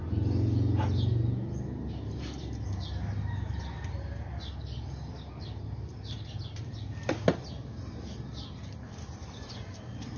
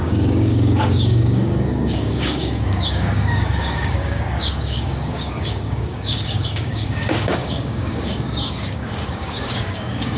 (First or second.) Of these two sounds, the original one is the first